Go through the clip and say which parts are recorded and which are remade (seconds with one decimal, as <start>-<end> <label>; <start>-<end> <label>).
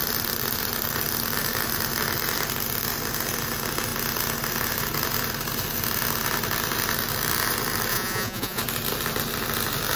0.0-7.9 recorded; 7.9-8.6 remade; 8.6-10.0 recorded